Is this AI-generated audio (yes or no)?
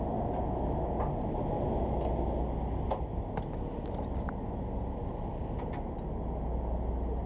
no